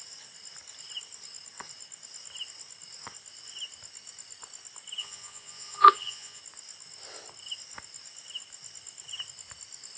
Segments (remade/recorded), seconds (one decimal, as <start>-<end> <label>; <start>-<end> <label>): 0.0-5.0 recorded; 5.0-6.4 remade; 6.4-10.0 recorded